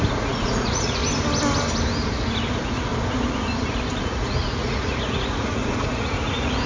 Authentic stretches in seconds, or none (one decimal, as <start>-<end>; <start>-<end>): 1.0-2.5; 2.9-4.0